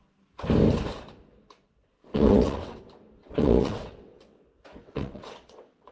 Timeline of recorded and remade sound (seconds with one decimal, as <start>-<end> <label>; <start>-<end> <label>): 0.0-2.1 recorded; 2.1-2.8 remade; 2.8-3.2 recorded; 3.2-5.9 remade